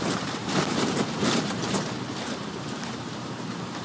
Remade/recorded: remade